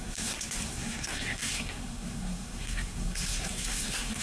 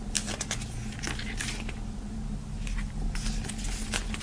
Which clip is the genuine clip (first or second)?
second